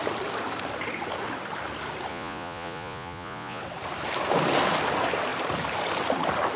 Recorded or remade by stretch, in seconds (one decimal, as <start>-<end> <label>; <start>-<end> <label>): 0.0-2.1 recorded; 2.1-3.6 remade; 3.6-6.6 recorded